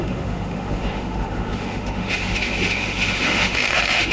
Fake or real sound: fake